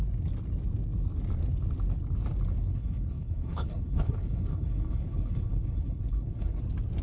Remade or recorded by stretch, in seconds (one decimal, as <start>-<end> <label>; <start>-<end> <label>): 0.0-2.7 recorded; 2.7-6.6 remade; 6.6-7.0 recorded